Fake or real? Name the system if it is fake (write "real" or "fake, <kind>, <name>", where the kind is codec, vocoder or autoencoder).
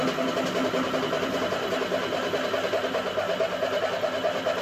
real